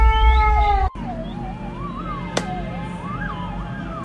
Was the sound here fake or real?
real